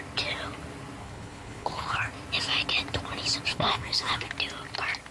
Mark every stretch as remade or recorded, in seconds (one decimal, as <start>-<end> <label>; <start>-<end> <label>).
0.0-1.0 recorded; 1.0-2.1 remade; 2.1-3.5 recorded; 3.5-4.3 remade; 4.3-5.1 recorded